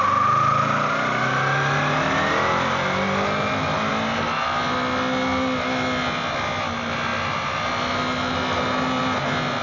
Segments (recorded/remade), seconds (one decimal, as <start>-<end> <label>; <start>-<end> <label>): 0.0-9.6 recorded